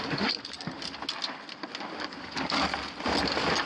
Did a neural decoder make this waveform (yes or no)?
no